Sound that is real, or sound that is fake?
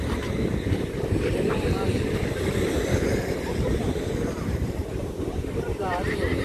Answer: fake